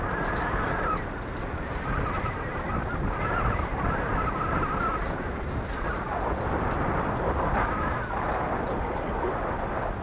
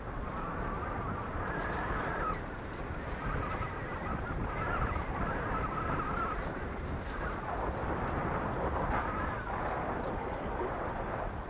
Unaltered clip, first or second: first